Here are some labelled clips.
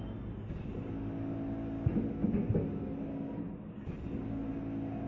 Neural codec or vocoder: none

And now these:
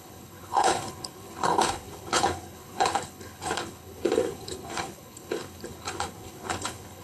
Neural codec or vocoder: codec, HILCodec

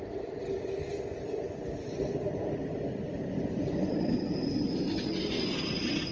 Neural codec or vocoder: none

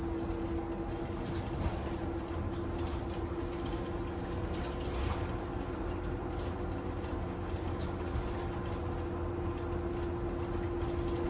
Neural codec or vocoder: none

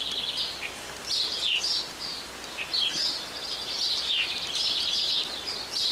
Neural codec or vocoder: vocoder, BigVGAN v2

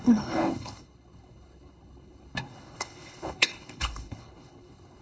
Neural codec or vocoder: codec, HILCodec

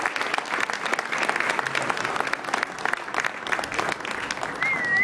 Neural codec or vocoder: none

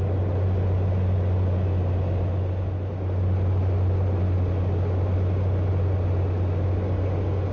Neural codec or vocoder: none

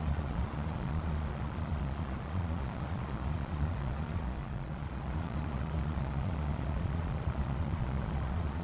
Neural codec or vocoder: vocoder, Vocos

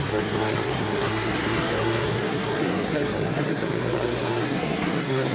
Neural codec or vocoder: codec, SNAC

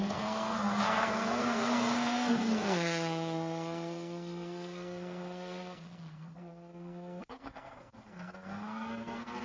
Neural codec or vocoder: codec, SNAC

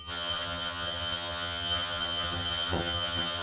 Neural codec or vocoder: vocoder, HiFi-GAN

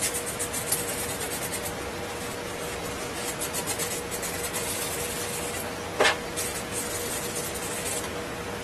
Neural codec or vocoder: none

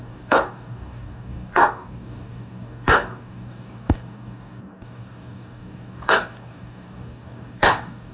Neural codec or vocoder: codec, DAC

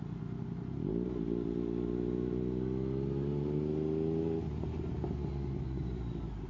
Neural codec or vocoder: none